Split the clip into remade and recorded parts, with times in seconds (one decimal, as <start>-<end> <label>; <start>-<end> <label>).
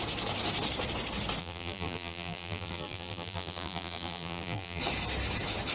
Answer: 0.0-1.4 recorded; 1.4-4.8 remade; 4.8-5.7 recorded